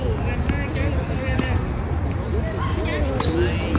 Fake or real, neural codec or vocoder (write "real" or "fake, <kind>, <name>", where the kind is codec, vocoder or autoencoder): real